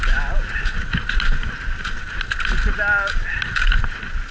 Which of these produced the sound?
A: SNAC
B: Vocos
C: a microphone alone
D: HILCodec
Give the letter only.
C